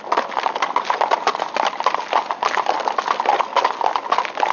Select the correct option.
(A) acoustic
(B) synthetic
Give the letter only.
A